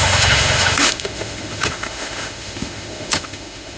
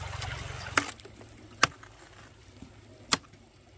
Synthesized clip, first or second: first